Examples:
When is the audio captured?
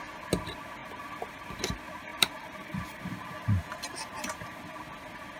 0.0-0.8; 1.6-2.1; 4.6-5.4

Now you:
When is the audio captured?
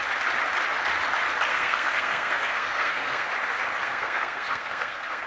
0.0-1.5; 3.3-3.8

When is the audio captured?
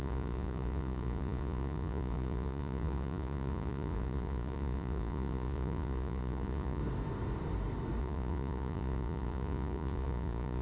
6.8-8.0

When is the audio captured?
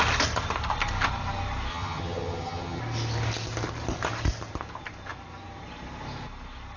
0.0-1.7; 2.8-6.8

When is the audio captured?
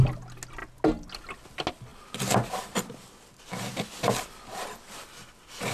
0.0-5.7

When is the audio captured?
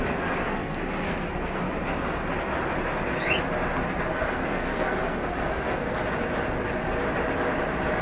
0.0-0.4; 1.7-4.1; 6.0-8.0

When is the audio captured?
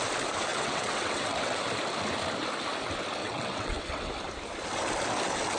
0.0-0.5; 1.6-3.2; 4.1-5.6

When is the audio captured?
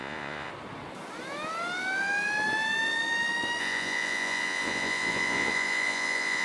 0.5-3.6